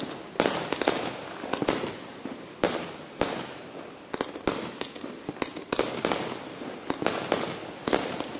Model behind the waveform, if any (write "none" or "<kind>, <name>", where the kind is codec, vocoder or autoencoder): none